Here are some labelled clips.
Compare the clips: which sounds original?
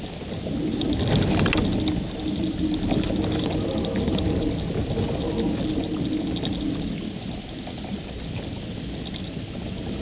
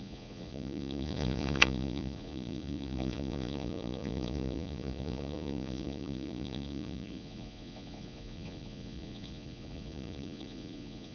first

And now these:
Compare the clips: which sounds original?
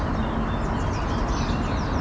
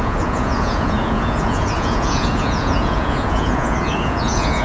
first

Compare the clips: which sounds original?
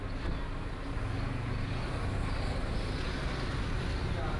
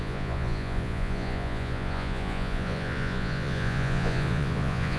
first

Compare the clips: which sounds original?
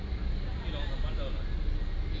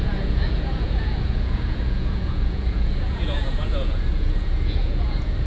first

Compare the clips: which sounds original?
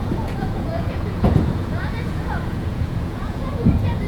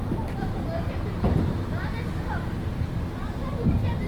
second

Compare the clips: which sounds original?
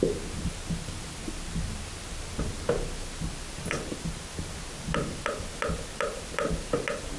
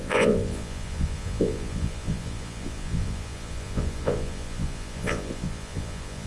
first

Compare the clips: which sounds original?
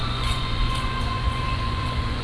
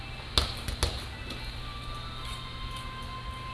second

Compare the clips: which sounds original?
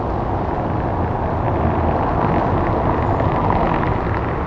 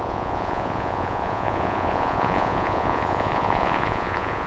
first